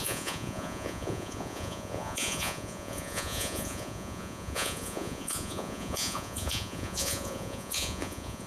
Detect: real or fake fake